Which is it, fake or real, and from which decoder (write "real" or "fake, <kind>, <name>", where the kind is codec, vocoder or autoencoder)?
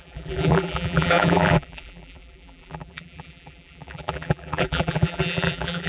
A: fake, vocoder, BigVGAN v2